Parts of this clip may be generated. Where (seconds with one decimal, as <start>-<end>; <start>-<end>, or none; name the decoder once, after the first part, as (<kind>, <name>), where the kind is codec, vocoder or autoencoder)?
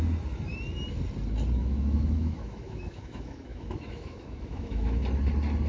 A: 1.6-5.0 (autoencoder, DAC-VAE)